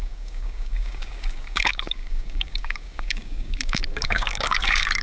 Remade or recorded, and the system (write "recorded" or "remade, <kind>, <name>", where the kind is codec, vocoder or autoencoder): remade, codec, DAC